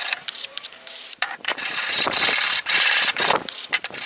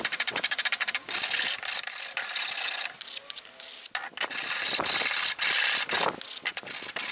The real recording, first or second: second